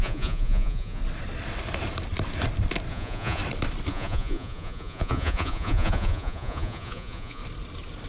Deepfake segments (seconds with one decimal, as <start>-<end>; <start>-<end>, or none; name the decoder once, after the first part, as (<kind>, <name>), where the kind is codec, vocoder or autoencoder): 0.0-1.0 (vocoder, Vocos); 2.9-3.4; 3.9-7.4